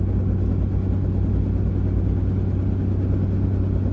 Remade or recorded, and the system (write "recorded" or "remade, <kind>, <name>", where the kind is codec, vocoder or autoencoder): recorded